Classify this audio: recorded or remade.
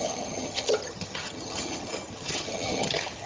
remade